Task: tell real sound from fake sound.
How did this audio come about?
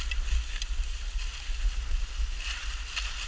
real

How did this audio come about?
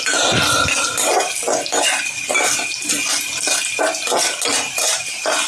real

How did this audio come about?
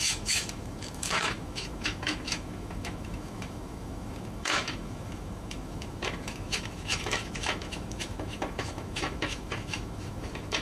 fake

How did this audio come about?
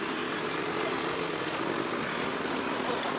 real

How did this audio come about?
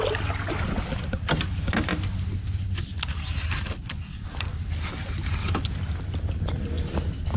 real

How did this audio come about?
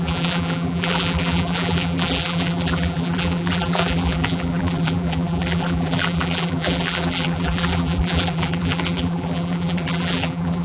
fake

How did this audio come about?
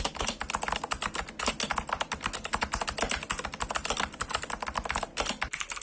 real